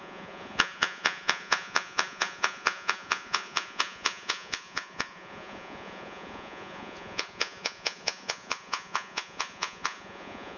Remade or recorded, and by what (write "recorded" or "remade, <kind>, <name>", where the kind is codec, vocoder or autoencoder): remade, vocoder, Vocos